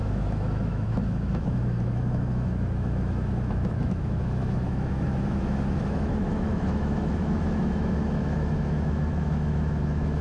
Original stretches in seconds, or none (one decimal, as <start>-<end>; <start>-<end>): none